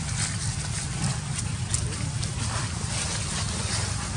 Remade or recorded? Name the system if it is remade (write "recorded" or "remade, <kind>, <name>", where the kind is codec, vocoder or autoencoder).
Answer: recorded